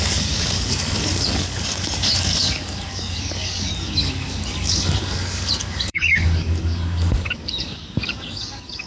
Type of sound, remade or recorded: remade